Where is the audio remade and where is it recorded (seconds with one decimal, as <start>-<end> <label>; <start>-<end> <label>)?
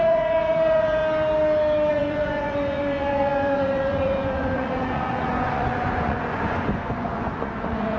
0.0-1.0 remade; 1.0-1.9 recorded; 1.9-8.0 remade